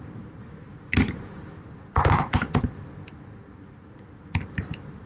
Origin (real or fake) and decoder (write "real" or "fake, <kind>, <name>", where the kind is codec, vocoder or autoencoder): fake, vocoder, BigVGAN v2